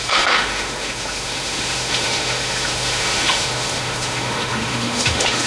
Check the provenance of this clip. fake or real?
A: fake